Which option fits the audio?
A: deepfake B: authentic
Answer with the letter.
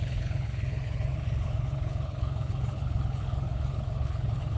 A